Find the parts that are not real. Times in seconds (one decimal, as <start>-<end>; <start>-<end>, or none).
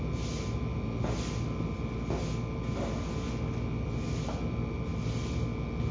none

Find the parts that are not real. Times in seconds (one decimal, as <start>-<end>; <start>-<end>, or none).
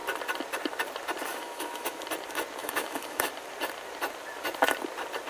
1.3-2.0; 2.6-3.3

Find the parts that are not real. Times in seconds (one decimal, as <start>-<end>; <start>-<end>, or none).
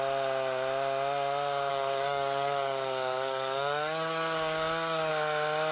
1.7-5.1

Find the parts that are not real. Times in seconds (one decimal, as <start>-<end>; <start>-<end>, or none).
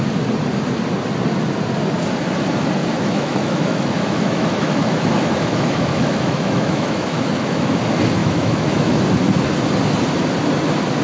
2.8-7.8; 8.2-9.0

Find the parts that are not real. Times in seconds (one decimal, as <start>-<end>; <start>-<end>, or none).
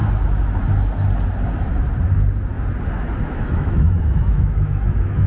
3.2-5.3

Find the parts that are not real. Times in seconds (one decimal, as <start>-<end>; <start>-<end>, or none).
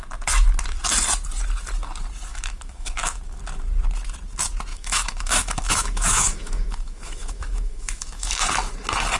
2.3-3.2; 4.7-8.5